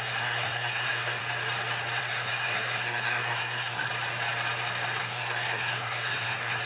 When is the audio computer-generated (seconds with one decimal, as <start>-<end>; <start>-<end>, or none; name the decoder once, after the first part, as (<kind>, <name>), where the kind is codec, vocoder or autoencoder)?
0.0-1.2 (codec, SNAC); 2.0-3.9; 5.0-6.7